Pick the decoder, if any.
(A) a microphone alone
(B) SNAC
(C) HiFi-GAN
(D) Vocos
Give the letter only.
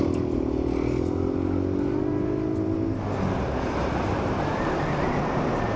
A